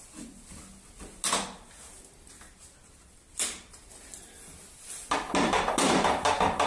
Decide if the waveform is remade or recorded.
recorded